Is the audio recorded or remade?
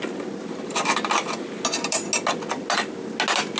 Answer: recorded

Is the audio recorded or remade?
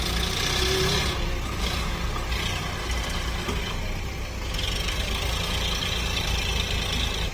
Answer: recorded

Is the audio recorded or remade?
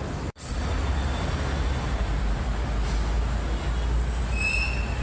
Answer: recorded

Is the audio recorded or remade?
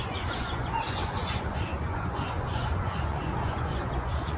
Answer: remade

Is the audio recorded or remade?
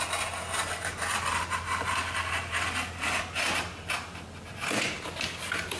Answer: recorded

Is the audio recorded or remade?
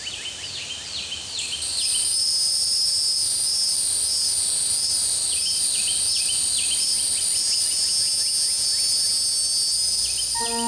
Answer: recorded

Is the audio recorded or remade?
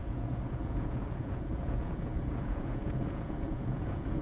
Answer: remade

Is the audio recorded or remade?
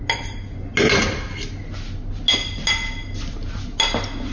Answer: recorded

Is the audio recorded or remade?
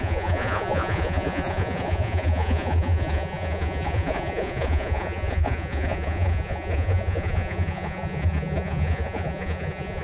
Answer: remade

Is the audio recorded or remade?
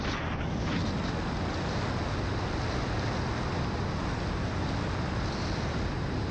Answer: recorded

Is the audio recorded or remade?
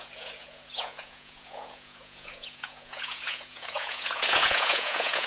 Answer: remade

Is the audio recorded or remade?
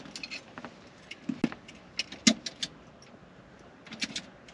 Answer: recorded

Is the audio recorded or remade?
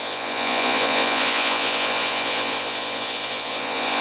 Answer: remade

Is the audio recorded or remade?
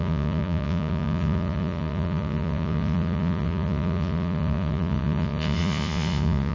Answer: remade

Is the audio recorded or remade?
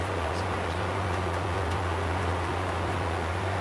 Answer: remade